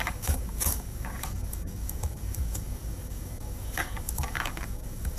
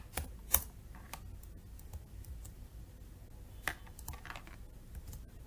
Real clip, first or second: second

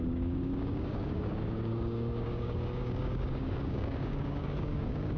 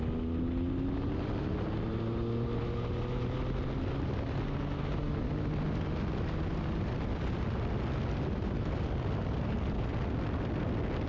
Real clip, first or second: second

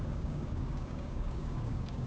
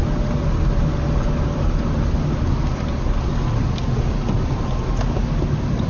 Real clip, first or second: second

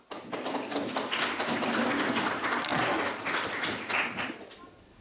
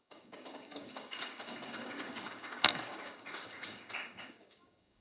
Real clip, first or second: first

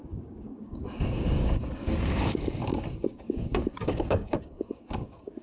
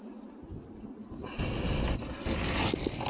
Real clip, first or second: second